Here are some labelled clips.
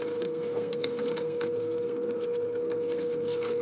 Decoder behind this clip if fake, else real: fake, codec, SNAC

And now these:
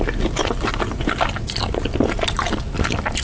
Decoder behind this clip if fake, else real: real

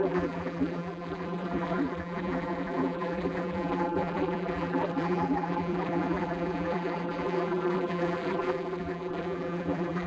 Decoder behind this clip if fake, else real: fake, vocoder, BigVGAN v2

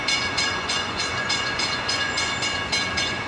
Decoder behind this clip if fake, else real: fake, vocoder, Vocos